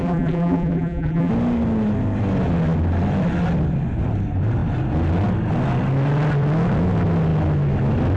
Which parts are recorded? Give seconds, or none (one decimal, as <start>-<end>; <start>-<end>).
1.3-8.2